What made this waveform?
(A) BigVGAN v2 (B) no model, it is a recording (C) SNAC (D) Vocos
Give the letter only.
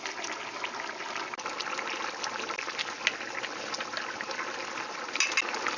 B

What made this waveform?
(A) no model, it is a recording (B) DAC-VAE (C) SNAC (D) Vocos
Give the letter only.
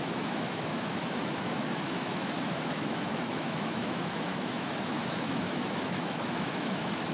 B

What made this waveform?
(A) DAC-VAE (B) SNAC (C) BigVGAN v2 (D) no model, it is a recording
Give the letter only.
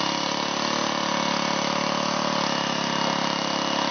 D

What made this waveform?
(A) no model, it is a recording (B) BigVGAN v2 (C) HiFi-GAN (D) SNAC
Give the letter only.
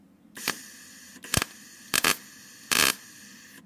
A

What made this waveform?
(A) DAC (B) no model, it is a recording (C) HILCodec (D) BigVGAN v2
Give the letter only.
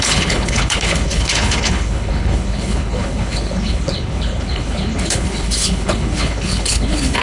C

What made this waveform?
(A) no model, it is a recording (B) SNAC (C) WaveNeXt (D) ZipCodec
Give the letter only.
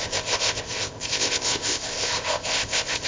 D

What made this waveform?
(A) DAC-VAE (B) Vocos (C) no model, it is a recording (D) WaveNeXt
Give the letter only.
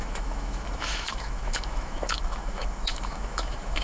A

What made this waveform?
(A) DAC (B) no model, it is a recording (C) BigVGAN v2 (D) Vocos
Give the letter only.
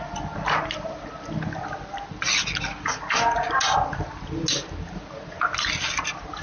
B